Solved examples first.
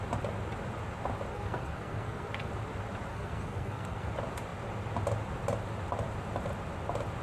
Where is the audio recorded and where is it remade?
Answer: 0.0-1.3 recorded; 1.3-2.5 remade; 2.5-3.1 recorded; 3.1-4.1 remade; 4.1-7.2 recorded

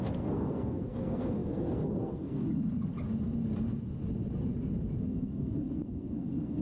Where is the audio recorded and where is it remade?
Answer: 0.0-2.4 remade; 2.4-5.0 recorded; 5.0-6.6 remade

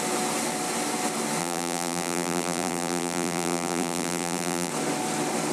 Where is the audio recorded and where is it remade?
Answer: 0.0-1.4 recorded; 1.4-4.7 remade; 4.7-5.5 recorded

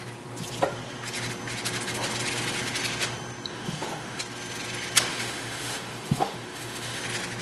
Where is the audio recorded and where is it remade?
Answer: 0.0-3.5 recorded; 3.5-4.2 remade; 4.2-5.1 recorded; 5.1-7.0 remade; 7.0-7.4 recorded

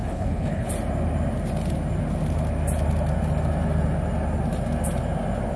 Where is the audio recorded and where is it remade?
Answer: 0.0-0.7 remade; 0.7-5.6 recorded

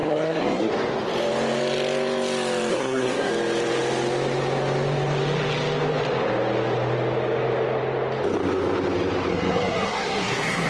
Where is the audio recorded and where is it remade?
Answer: 0.0-0.7 remade; 0.7-2.7 recorded; 2.7-3.3 remade; 3.3-9.3 recorded; 9.3-10.7 remade

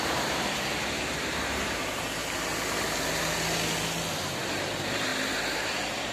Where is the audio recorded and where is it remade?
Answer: 0.0-2.2 remade; 2.2-4.1 recorded; 4.1-6.1 remade